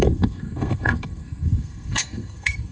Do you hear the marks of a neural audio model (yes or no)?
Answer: yes